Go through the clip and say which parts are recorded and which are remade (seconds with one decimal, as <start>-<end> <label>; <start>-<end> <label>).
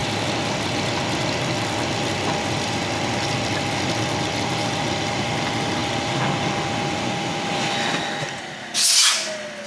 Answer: 0.0-9.7 recorded